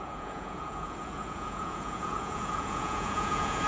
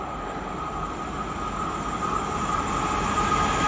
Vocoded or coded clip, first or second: first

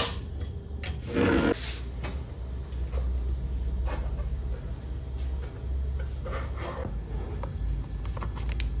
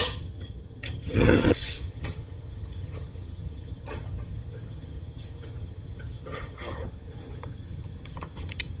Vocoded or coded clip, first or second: second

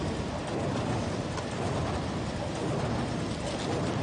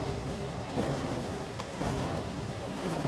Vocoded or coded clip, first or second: second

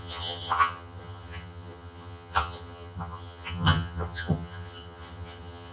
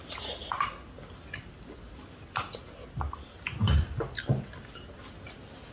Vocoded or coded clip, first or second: first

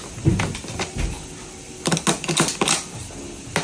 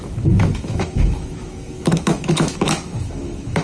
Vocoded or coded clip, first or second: second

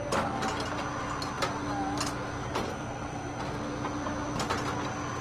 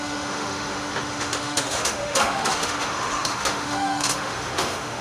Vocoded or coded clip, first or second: second